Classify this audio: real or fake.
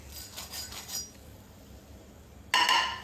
real